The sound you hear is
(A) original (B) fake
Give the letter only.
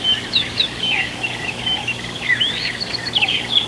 B